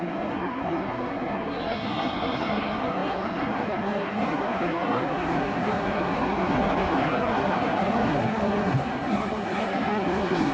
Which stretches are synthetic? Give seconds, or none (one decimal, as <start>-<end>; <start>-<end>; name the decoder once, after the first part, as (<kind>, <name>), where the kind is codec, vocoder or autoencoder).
0.0-10.5 (codec, SNAC)